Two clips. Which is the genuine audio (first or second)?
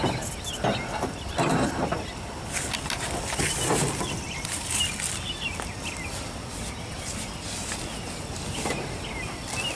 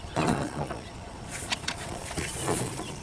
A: first